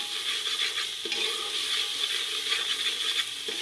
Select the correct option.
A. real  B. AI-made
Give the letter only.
A